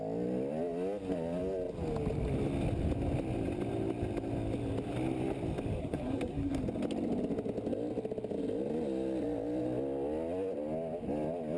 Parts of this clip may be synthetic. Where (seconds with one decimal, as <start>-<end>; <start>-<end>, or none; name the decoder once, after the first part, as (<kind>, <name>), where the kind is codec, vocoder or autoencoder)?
5.8-6.6 (codec, SNAC)

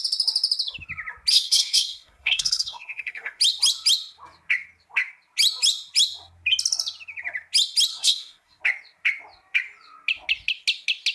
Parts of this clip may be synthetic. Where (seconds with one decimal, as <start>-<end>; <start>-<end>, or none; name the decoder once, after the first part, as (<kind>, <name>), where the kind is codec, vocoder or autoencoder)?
1.3-3.4 (codec, SNAC); 7.9-8.6

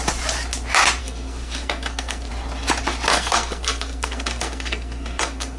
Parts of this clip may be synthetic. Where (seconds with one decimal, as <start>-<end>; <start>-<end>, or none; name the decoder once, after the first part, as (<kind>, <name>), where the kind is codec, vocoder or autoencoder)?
1.0-2.3 (codec, SNAC); 3.1-5.6

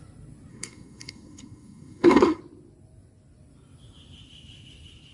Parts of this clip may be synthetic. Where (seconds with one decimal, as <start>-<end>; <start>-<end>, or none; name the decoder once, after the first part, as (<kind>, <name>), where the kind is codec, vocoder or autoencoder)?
0.5-2.4 (codec, SNAC)

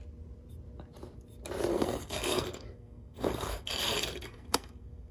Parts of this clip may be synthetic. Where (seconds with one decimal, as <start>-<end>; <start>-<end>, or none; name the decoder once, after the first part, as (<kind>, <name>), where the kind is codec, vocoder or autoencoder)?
1.7-5.1 (codec, SNAC)

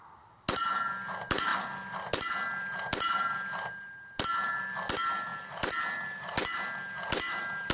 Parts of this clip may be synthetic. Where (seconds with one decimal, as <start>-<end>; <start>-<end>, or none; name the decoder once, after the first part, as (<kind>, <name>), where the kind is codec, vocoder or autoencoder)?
none

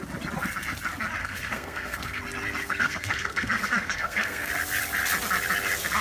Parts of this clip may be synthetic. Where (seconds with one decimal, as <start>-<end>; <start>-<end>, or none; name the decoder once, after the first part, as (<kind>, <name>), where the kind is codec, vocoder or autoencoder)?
1.2-2.2 (codec, SNAC); 2.6-4.5